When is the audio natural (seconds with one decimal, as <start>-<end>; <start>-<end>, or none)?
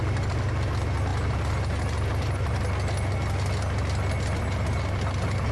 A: 0.0-5.5